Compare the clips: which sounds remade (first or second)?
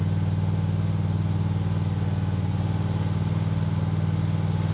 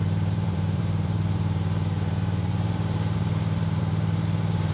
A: second